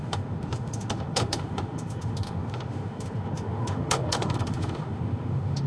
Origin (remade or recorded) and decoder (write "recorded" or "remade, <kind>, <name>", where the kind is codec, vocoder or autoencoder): remade, autoencoder, DAC-VAE